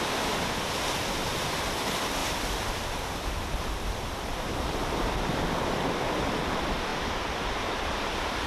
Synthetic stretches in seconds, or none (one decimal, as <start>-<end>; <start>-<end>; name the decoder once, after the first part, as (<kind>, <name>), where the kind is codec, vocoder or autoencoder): 0.0-2.2 (vocoder, BigVGAN v2); 3.5-6.9; 7.8-8.5